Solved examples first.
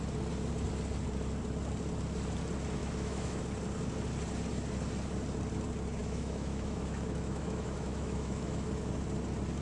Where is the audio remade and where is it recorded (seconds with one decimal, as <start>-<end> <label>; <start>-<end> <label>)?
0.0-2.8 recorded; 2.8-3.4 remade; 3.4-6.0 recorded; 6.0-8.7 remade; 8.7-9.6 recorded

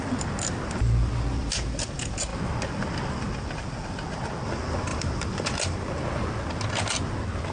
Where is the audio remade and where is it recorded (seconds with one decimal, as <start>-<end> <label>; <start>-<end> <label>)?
0.0-1.4 recorded; 1.4-1.9 remade; 1.9-4.9 recorded; 4.9-6.5 remade; 6.5-7.5 recorded

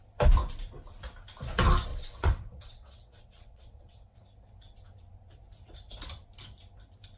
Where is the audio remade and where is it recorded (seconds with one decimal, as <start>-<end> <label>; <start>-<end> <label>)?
0.0-1.9 recorded; 1.9-4.2 remade; 4.2-7.2 recorded

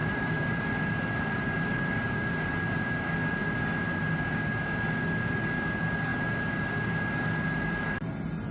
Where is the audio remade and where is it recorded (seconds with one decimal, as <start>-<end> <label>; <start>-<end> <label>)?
0.0-2.2 remade; 2.2-8.5 recorded

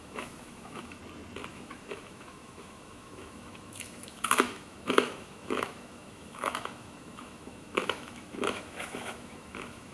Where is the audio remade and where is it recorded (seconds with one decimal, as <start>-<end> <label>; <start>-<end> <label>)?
0.0-1.0 remade; 1.0-1.5 recorded; 1.5-9.9 remade

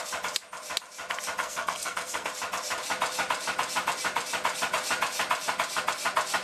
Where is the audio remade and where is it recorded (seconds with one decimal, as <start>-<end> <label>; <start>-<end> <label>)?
0.0-1.4 recorded; 1.4-2.3 remade; 2.3-6.4 recorded

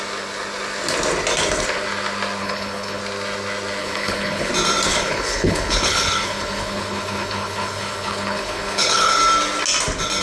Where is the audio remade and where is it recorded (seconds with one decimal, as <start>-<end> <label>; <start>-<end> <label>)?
0.0-2.4 recorded; 2.4-3.0 remade; 3.0-3.8 recorded; 3.8-4.5 remade; 4.5-4.9 recorded; 4.9-9.2 remade; 9.2-10.2 recorded